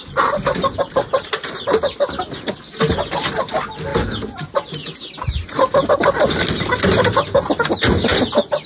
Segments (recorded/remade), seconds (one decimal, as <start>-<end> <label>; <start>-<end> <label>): 0.0-8.7 recorded